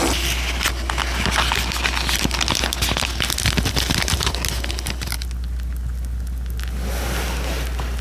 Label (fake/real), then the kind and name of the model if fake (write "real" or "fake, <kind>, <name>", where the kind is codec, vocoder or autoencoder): real